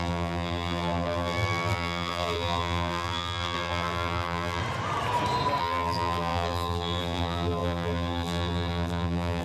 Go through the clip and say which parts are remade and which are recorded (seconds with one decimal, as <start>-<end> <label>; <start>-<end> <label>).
0.0-4.6 remade; 4.6-5.6 recorded; 5.6-9.4 remade